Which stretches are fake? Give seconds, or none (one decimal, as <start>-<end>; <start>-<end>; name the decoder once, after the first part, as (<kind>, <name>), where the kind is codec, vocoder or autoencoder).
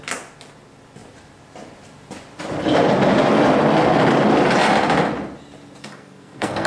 5.8-6.7 (codec, SNAC)